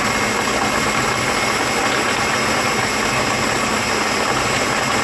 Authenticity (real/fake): real